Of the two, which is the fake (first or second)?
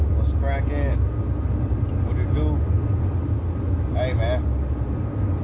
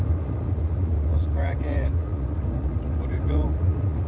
second